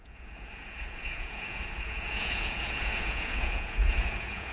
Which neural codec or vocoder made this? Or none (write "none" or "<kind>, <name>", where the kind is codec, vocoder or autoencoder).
vocoder, Vocos